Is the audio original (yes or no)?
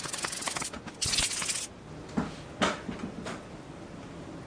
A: yes